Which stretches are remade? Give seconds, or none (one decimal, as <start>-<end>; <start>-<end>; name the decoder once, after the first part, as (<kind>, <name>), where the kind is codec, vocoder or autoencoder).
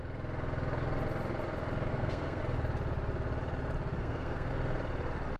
1.9-2.4 (codec, SNAC); 3.9-4.5